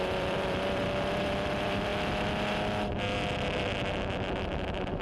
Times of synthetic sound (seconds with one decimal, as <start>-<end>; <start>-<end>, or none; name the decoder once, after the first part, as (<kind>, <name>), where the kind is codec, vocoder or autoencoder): 0.0-1.9 (vocoder, BigVGAN v2)